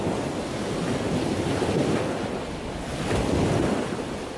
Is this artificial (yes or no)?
no